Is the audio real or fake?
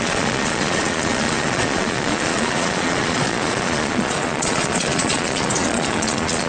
fake